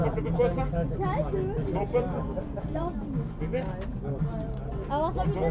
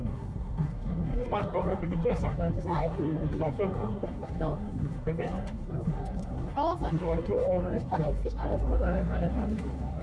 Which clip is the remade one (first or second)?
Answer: second